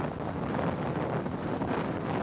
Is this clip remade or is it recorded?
recorded